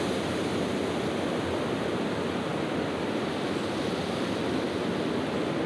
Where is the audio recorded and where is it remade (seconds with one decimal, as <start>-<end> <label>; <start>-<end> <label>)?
0.0-5.7 recorded

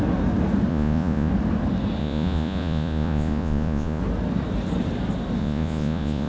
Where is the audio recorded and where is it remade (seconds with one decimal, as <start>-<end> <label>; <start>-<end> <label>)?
0.0-0.7 recorded; 0.7-1.3 remade; 1.3-2.0 recorded; 2.0-4.0 remade; 4.0-5.4 recorded; 5.4-6.3 remade

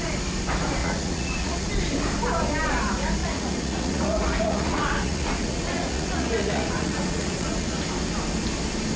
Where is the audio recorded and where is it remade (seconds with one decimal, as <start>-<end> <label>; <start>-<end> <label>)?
0.0-0.8 recorded; 0.8-1.7 remade; 1.7-3.2 recorded; 3.2-7.8 remade; 7.8-9.0 recorded

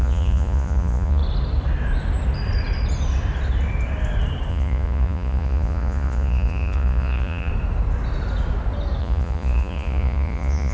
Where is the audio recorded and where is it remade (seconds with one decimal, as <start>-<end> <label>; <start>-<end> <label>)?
0.0-1.2 remade; 1.2-4.5 recorded; 4.5-7.5 remade; 7.5-9.0 recorded; 9.0-10.7 remade

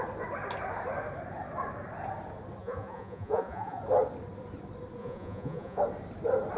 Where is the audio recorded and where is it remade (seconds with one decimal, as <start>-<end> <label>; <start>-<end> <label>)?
0.0-2.6 recorded; 2.6-3.8 remade; 3.8-5.0 recorded; 5.0-5.8 remade; 5.8-6.6 recorded

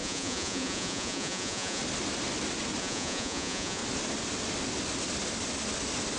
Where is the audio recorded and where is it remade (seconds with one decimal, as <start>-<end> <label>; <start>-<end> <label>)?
0.0-1.8 remade; 1.8-2.8 recorded; 2.8-3.8 remade; 3.8-6.2 recorded

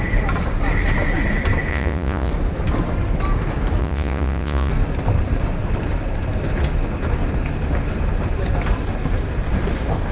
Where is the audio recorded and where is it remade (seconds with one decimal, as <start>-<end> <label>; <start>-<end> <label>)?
0.0-1.7 recorded; 1.7-2.3 remade; 2.3-3.8 recorded; 3.8-4.7 remade; 4.7-10.1 recorded